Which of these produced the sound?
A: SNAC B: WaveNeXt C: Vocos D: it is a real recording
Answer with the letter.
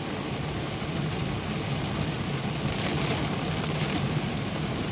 D